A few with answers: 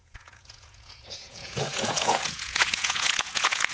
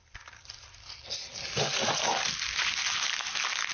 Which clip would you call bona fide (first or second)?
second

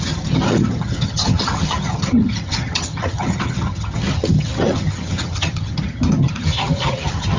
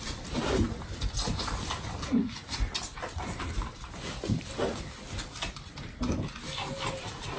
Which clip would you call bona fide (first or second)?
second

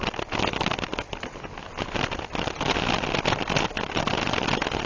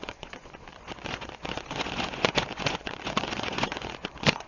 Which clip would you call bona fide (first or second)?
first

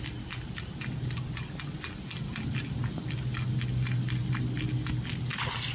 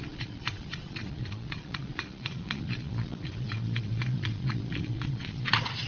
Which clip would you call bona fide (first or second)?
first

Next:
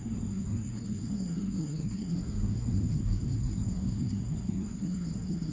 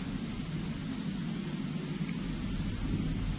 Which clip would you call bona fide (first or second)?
second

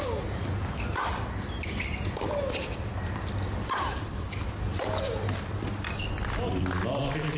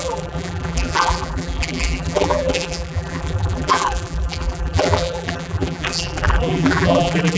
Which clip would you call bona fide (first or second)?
first